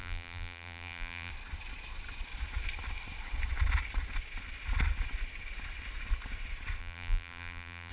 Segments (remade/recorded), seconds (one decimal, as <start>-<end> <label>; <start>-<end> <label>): 0.0-1.3 remade; 1.3-6.8 recorded; 6.8-7.9 remade